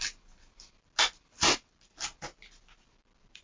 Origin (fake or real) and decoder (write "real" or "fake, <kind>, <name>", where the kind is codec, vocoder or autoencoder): real